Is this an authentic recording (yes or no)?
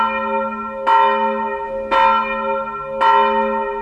yes